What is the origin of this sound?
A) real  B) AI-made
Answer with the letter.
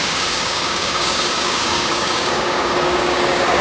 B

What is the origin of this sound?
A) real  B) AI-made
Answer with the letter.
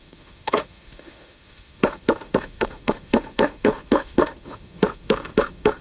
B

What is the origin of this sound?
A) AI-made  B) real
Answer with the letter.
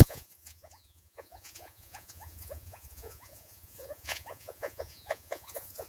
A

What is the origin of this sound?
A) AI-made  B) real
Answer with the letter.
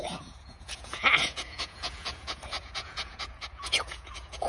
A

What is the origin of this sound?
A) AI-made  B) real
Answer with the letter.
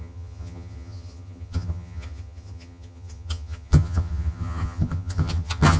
A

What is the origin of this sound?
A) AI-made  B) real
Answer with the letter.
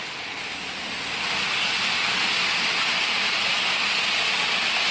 B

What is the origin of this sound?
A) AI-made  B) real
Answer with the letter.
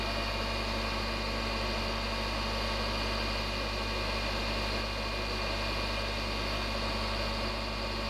B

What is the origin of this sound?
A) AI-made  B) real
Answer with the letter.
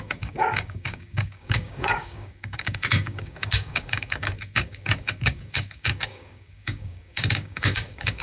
A